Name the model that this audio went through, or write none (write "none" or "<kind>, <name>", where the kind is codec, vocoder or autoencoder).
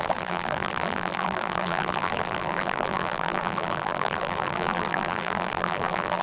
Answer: vocoder, BigVGAN v2